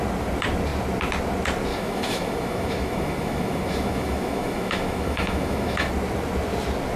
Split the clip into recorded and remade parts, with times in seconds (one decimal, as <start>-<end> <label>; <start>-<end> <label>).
0.0-1.7 recorded; 1.7-5.9 remade; 5.9-7.0 recorded